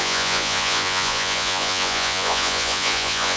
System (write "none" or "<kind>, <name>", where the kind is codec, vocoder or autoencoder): vocoder, Vocos